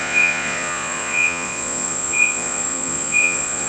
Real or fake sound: fake